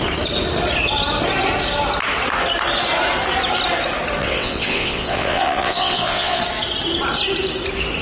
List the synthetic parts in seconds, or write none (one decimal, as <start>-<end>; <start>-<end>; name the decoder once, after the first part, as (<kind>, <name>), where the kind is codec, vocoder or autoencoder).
4.2-6.4 (vocoder, WaveNeXt)